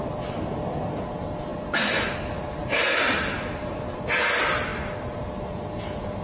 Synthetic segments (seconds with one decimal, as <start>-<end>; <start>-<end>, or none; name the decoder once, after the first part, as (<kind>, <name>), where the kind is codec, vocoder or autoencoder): 2.6-4.0 (vocoder, BigVGAN v2)